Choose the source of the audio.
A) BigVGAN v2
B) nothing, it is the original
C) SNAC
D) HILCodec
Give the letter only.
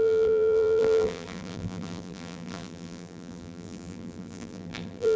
A